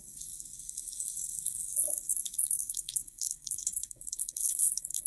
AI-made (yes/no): yes